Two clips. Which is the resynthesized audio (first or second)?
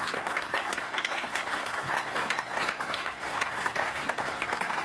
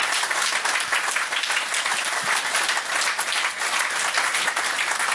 first